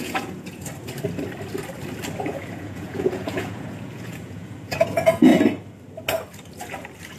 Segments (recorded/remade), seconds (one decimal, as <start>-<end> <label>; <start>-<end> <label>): 0.0-0.6 remade; 0.6-2.2 recorded; 2.2-5.3 remade; 5.3-7.2 recorded

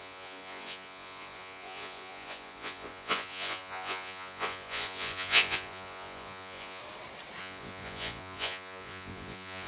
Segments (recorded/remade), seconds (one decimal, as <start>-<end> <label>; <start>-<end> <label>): 0.0-6.8 remade; 6.8-7.4 recorded; 7.4-9.7 remade

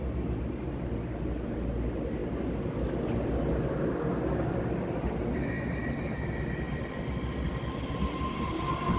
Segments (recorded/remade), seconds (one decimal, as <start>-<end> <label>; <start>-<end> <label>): 0.0-9.0 recorded